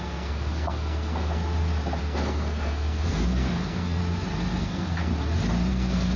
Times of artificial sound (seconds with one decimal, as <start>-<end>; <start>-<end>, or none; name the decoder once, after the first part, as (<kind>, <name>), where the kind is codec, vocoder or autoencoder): 0.0-1.4 (codec, SNAC); 2.0-4.0; 4.6-5.1; 5.7-6.2